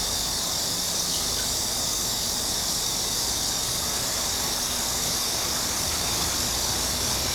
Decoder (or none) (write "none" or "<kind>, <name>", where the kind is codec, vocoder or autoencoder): codec, DAC